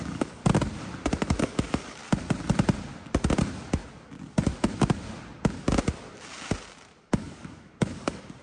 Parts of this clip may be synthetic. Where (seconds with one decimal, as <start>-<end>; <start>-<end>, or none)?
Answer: 0.0-0.4; 1.4-2.0; 7.0-8.4